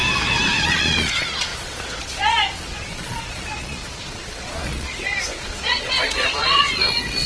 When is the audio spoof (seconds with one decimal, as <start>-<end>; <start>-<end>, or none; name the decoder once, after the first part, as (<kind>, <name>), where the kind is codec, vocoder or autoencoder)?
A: 0.6-7.3 (vocoder, Vocos)